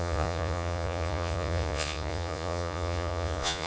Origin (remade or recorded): remade